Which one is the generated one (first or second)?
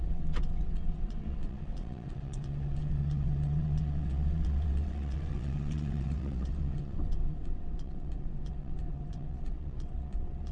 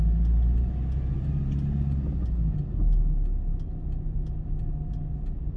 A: first